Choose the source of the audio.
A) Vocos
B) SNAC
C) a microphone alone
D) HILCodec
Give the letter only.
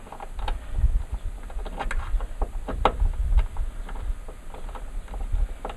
C